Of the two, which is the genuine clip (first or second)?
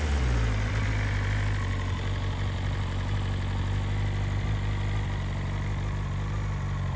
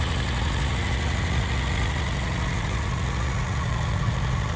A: first